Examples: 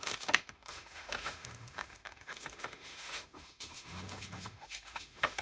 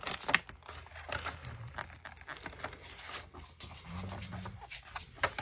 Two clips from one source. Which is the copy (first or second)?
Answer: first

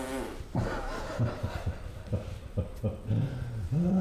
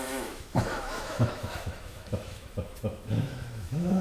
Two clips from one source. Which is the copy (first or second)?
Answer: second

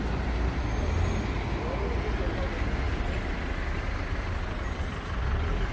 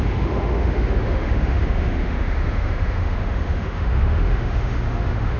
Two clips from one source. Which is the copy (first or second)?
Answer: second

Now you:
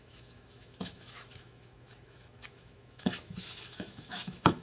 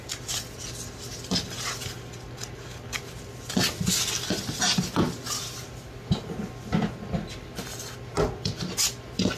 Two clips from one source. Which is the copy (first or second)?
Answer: first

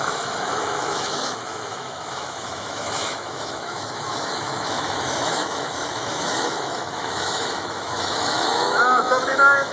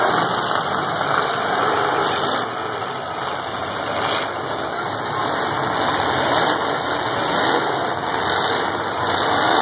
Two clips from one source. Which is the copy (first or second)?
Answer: first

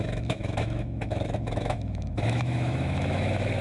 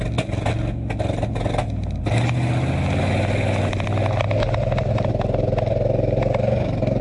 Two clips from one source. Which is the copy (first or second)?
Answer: first